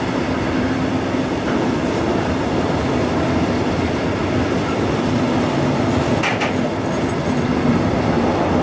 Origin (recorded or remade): recorded